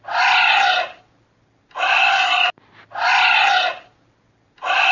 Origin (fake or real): real